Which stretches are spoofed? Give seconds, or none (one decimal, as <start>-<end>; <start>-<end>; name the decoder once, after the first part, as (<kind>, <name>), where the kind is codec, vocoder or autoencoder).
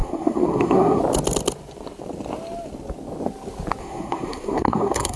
0.0-1.0 (codec, SNAC); 3.8-5.2